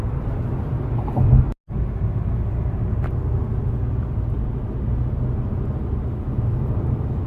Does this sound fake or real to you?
real